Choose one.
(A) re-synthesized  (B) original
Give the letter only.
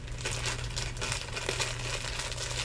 B